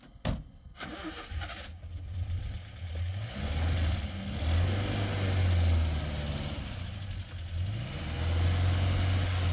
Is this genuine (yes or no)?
yes